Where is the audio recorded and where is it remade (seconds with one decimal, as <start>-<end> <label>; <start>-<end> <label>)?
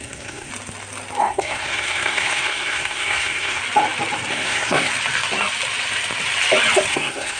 0.0-0.5 remade; 0.5-1.2 recorded; 1.2-3.6 remade; 3.6-4.3 recorded; 4.3-4.9 remade; 4.9-6.9 recorded; 6.9-7.4 remade